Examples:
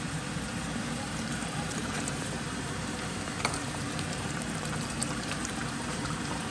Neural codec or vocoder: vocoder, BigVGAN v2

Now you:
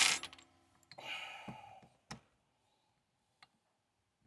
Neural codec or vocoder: none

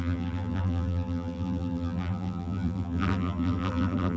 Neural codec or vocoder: vocoder, BigVGAN v2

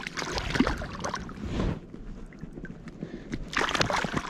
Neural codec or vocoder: none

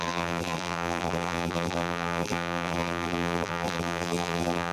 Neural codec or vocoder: vocoder, BigVGAN v2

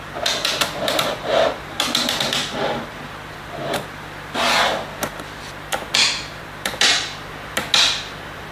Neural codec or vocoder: none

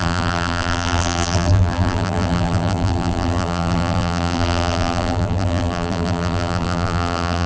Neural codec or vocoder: vocoder, BigVGAN v2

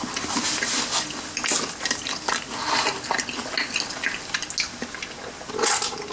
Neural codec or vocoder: none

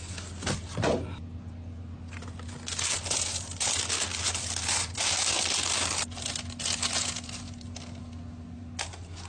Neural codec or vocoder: none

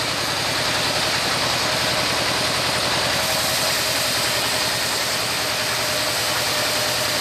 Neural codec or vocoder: none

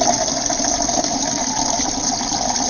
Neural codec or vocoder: vocoder, BigVGAN v2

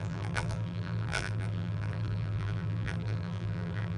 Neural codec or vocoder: vocoder, BigVGAN v2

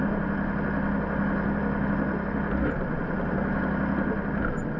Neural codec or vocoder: none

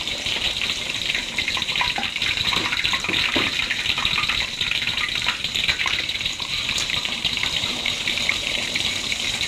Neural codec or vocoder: vocoder, BigVGAN v2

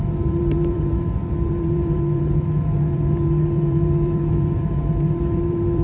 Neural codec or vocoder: vocoder, BigVGAN v2